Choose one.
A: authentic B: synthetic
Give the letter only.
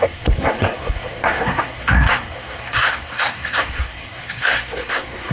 B